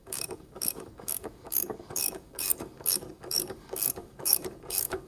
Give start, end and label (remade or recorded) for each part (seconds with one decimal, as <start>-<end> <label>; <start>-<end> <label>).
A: 0.0-5.1 remade